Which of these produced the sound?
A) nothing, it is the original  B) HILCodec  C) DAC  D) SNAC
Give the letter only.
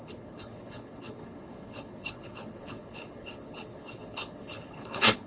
B